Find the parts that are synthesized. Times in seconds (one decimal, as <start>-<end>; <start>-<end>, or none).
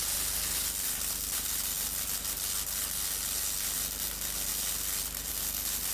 none